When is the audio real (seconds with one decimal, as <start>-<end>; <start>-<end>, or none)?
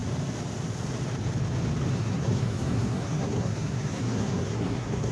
0.0-1.9